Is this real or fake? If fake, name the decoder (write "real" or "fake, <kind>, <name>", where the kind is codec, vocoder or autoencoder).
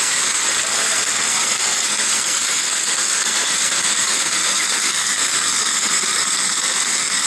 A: fake, codec, SNAC